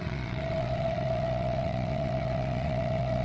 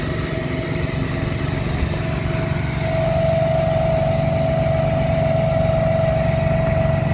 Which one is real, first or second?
second